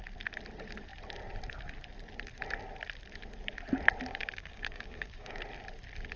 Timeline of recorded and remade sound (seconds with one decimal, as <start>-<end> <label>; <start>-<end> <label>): 0.0-4.1 recorded; 4.1-5.4 remade; 5.4-6.2 recorded